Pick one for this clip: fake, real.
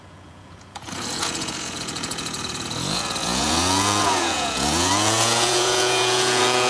fake